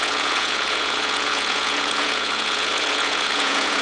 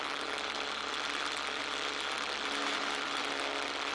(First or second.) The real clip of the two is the second